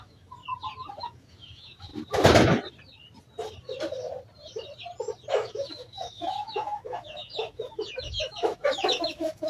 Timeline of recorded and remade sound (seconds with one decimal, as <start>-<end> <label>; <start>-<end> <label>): 0.0-0.4 remade; 0.4-1.0 recorded; 1.0-1.9 remade; 1.9-5.3 recorded; 5.3-9.5 remade

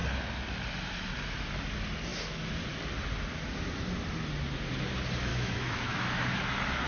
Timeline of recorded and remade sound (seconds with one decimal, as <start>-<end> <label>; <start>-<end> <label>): 0.0-5.3 recorded; 5.3-6.4 remade; 6.4-6.9 recorded

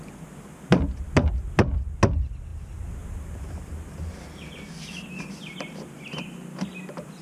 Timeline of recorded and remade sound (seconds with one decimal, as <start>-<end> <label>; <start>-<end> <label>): 0.0-7.2 recorded

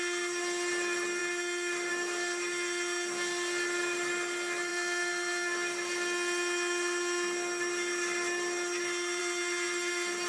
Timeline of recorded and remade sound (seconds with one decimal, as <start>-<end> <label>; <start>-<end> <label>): 0.0-10.3 recorded